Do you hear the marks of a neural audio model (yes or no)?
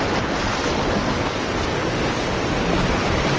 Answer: no